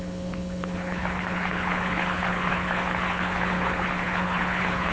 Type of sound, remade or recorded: remade